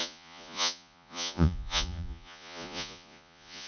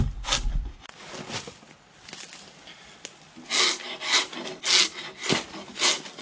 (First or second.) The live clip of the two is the second